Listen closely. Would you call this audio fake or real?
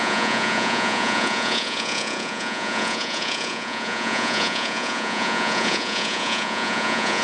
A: fake